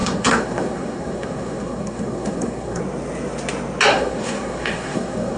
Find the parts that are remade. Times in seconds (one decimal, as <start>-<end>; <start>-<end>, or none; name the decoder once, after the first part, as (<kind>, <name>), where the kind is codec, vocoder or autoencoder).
0.0-2.8 (codec, SNAC); 3.9-5.4